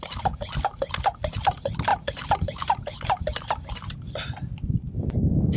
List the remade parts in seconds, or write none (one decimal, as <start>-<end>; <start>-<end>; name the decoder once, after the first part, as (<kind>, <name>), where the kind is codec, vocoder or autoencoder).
none